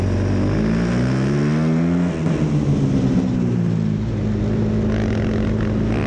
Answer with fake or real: real